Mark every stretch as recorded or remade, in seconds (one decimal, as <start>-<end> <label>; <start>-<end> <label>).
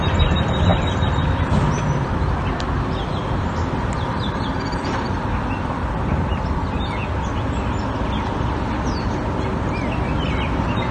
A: 0.0-7.0 remade; 7.0-9.7 recorded; 9.7-10.9 remade